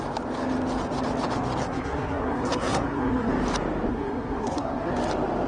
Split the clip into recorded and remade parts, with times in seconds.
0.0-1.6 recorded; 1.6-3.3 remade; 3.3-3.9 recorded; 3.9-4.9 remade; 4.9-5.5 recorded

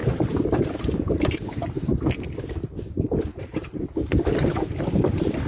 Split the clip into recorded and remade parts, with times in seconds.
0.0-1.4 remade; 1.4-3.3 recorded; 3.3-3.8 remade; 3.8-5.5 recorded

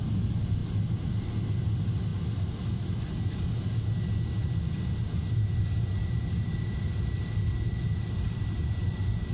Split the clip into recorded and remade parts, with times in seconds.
0.0-9.3 recorded

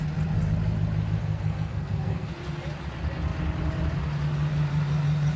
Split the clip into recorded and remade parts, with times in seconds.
0.0-1.2 recorded; 1.2-2.3 remade; 2.3-5.4 recorded

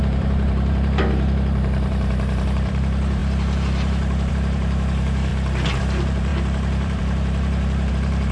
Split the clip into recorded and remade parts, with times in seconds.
0.0-5.3 remade; 5.3-5.8 recorded; 5.8-8.3 remade

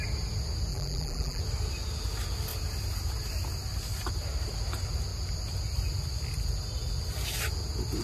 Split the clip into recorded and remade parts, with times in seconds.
0.0-0.7 recorded; 0.7-1.4 remade; 1.4-8.0 recorded

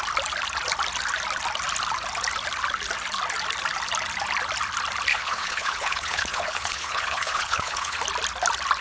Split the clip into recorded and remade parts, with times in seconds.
0.0-5.1 recorded; 5.1-8.0 remade; 8.0-8.8 recorded